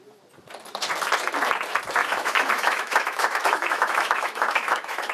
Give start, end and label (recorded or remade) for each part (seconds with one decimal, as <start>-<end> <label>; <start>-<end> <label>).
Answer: 0.0-2.0 recorded; 2.0-5.1 remade